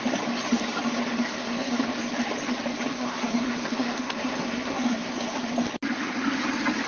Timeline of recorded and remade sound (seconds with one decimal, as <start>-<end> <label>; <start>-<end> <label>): 0.0-1.2 recorded; 1.2-1.8 remade; 1.8-2.9 recorded; 2.9-5.5 remade; 5.5-6.9 recorded